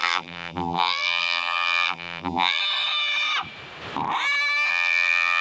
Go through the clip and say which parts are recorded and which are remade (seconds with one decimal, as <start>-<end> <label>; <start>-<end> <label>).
0.0-2.6 remade; 2.6-4.7 recorded; 4.7-5.4 remade